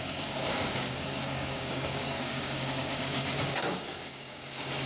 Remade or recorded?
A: remade